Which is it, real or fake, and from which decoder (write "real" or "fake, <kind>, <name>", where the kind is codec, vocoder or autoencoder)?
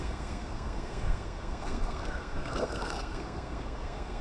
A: fake, codec, SNAC